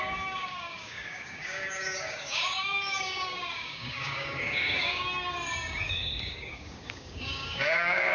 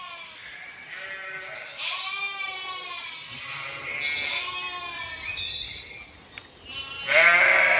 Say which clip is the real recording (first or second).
second